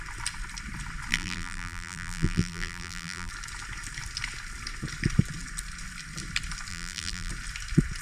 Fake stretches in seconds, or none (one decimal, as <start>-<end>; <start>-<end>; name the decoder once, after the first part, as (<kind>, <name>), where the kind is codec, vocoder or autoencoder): 1.1-3.3 (vocoder, BigVGAN v2); 6.7-7.3